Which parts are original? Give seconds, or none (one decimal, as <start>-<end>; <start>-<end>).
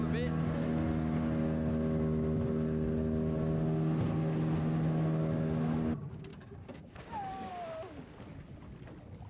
0.0-6.3; 7.5-9.3